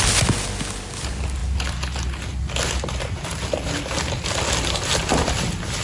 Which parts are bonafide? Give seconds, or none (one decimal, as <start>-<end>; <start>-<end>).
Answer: 0.0-5.8